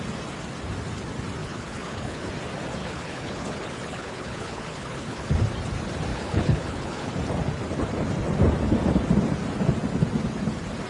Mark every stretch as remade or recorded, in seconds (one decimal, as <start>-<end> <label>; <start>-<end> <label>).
0.0-1.4 recorded; 1.4-2.3 remade; 2.3-2.8 recorded; 2.8-5.4 remade; 5.4-6.1 recorded; 6.1-7.1 remade; 7.1-10.9 recorded

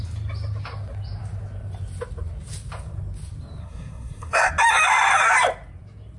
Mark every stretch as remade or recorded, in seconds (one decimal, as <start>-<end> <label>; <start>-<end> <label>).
0.0-3.6 recorded; 3.6-4.5 remade; 4.5-6.2 recorded

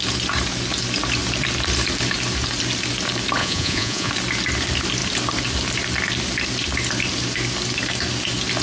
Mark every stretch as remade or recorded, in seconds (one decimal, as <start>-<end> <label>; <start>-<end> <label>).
0.0-3.4 recorded; 3.4-4.1 remade; 4.1-8.6 recorded

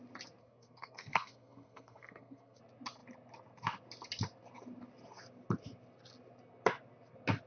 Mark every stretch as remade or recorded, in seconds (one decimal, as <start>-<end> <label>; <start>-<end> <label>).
0.0-0.4 recorded; 0.4-2.6 remade; 2.6-7.5 recorded

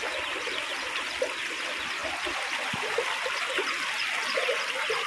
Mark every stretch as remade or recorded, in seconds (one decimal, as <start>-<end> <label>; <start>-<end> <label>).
0.0-5.1 recorded

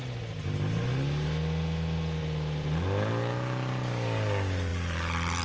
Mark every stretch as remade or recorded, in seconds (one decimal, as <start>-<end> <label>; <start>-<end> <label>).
0.0-5.4 recorded